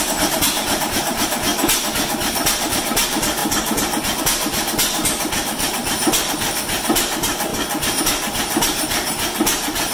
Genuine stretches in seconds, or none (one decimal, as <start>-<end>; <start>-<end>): 1.5-2.7; 3.4-4.2; 7.5-8.0